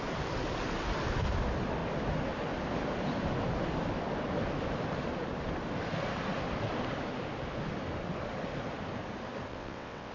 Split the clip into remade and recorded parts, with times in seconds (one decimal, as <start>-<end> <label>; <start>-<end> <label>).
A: 0.0-9.5 recorded; 9.5-10.1 remade